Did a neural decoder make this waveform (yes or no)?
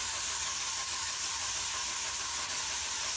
no